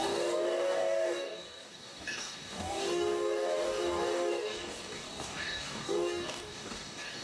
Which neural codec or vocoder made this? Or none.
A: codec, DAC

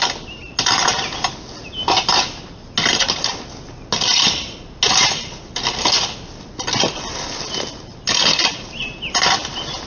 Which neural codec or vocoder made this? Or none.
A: none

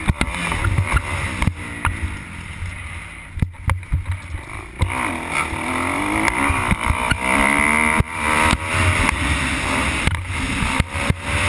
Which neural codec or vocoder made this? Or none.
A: none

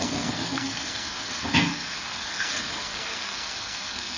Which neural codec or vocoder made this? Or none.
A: codec, SNAC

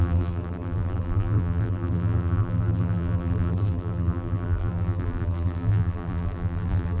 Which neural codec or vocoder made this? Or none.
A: vocoder, BigVGAN v2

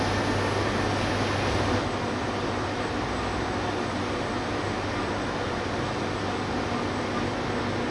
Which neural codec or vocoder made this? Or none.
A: none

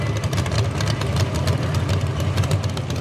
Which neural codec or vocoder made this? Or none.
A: vocoder, BigVGAN v2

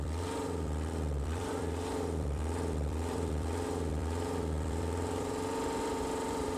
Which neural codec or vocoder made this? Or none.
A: vocoder, BigVGAN v2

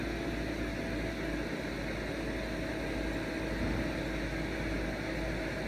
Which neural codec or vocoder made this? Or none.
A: none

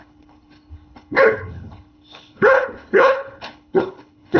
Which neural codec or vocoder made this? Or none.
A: codec, HILCodec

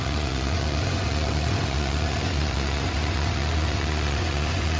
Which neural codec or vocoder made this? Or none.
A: vocoder, Vocos